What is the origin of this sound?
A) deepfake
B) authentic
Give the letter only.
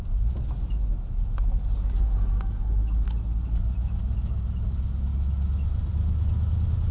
B